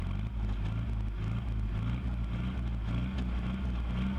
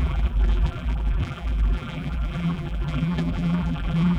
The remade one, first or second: second